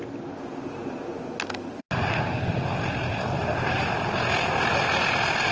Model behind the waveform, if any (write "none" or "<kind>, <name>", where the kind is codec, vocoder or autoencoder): none